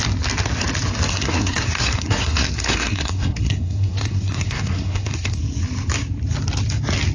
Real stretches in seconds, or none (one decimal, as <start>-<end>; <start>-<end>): 0.0-1.1; 5.4-7.1